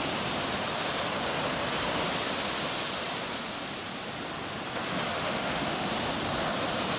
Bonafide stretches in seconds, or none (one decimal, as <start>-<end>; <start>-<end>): 0.0-5.1; 5.9-7.0